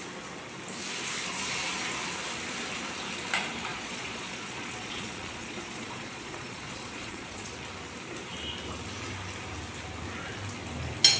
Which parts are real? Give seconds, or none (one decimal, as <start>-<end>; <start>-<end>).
0.0-3.7; 7.5-11.2